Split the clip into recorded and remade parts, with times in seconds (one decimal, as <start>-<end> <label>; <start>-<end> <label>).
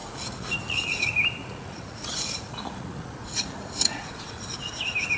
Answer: 0.0-0.9 remade; 0.9-1.4 recorded; 1.4-4.5 remade; 4.5-5.2 recorded